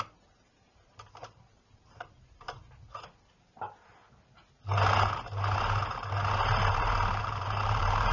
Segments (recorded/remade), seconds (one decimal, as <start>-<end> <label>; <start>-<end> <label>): 0.0-2.6 remade; 2.6-6.7 recorded; 6.7-8.1 remade